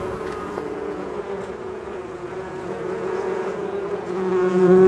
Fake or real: fake